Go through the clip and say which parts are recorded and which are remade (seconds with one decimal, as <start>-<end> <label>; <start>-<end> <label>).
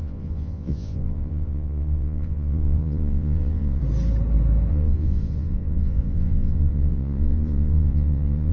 0.0-3.8 remade; 3.8-4.7 recorded; 4.7-8.5 remade